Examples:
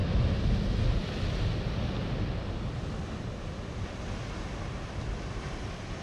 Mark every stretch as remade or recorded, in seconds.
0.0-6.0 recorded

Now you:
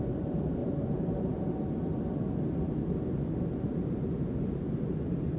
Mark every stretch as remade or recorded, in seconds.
0.0-0.6 recorded; 0.6-2.2 remade; 2.2-5.4 recorded

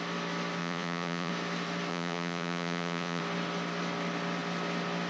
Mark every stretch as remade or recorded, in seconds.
0.0-0.6 recorded; 0.6-1.3 remade; 1.3-1.9 recorded; 1.9-3.2 remade; 3.2-5.1 recorded